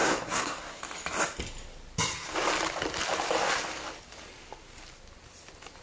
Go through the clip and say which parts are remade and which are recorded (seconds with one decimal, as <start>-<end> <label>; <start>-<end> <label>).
0.0-0.8 remade; 0.8-5.8 recorded